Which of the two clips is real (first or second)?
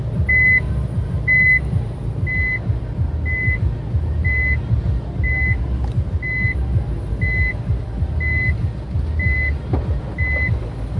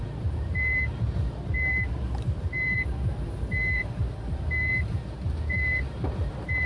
first